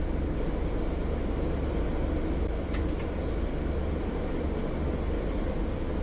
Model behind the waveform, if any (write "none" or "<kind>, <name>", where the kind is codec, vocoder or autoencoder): none